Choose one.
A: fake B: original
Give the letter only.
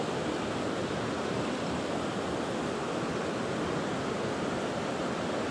B